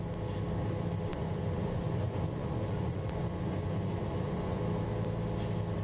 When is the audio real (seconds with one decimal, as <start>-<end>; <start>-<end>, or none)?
0.0-1.1; 4.6-5.8